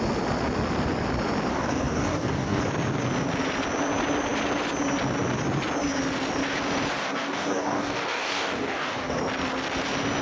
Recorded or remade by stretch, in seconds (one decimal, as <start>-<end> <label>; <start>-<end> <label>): 0.0-1.5 recorded; 1.5-2.6 remade; 2.6-7.0 recorded; 7.0-9.2 remade; 9.2-10.2 recorded